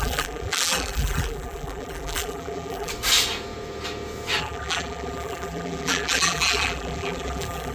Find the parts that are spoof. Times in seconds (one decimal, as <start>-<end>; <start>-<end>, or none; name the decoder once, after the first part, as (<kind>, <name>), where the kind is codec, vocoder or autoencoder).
0.0-2.9 (vocoder, BigVGAN v2); 4.4-7.7